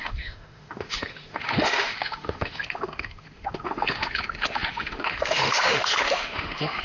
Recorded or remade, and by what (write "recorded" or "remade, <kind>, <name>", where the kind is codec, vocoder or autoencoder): remade, autoencoder, DAC-VAE